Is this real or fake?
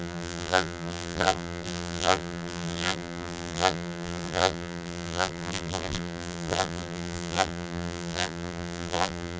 fake